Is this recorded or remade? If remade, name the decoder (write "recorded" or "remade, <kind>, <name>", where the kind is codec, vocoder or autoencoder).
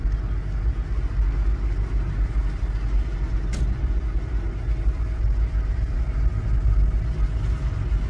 recorded